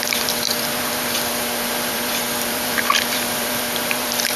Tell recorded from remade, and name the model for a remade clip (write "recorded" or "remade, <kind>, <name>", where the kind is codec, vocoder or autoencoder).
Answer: remade, vocoder, BigVGAN v2